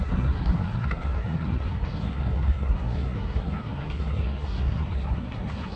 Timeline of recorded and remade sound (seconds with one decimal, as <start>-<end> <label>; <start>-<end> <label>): 0.0-5.8 remade